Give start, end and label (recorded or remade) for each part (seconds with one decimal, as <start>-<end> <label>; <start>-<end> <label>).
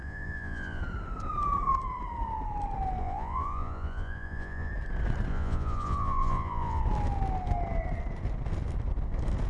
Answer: 0.0-0.8 remade; 0.8-3.0 recorded; 3.0-4.7 remade; 4.7-5.3 recorded; 5.3-6.8 remade; 6.8-9.5 recorded